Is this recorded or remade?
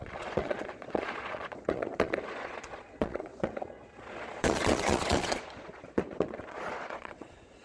remade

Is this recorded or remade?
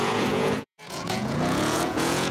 remade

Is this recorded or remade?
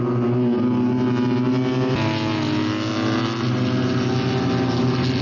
recorded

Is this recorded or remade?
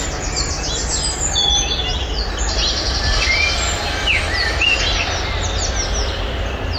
recorded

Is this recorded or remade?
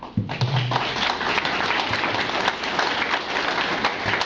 recorded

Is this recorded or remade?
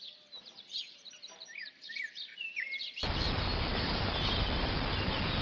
recorded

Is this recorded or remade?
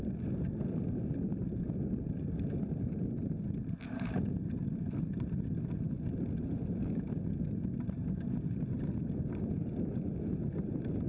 recorded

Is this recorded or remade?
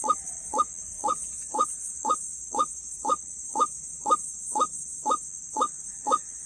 remade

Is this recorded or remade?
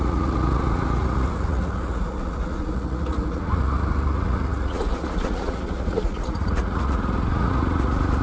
remade